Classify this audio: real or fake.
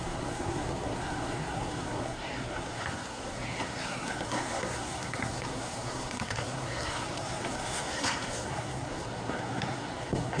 fake